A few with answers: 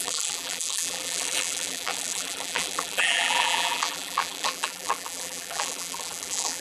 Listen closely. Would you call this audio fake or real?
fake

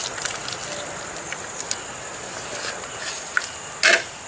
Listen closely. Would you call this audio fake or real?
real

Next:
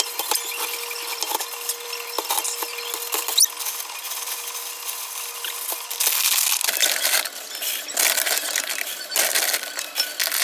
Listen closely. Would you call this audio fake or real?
real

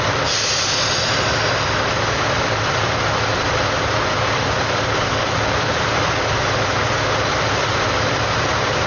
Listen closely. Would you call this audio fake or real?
fake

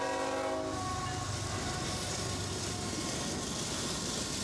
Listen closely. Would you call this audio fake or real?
real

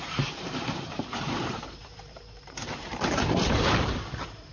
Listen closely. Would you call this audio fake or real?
fake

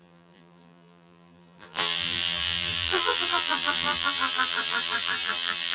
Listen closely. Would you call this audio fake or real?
fake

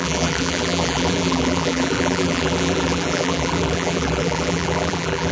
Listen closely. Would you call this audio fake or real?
fake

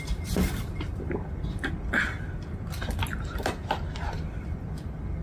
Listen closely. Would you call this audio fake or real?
fake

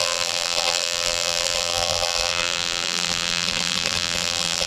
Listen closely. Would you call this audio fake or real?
fake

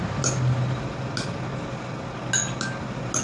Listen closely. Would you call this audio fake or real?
real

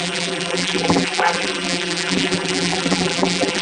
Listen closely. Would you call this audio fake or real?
fake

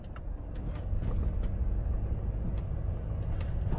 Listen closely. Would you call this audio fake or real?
real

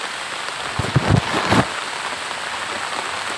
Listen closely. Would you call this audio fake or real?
real